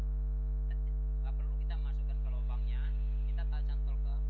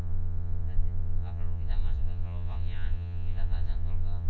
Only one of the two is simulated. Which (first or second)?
second